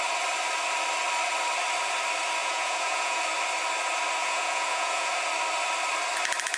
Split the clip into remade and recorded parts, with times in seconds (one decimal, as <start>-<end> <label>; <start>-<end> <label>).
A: 0.0-2.4 recorded; 2.4-3.2 remade; 3.2-4.2 recorded; 4.2-5.1 remade; 5.1-6.6 recorded